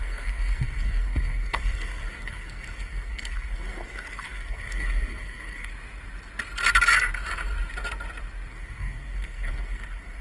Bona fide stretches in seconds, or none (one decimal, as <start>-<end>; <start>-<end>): 5.7-8.5